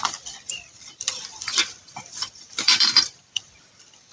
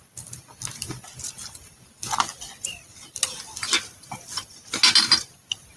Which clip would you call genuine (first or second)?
second